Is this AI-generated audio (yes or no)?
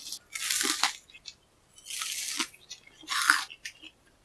no